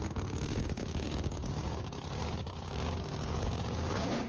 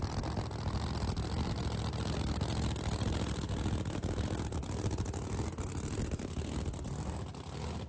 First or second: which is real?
second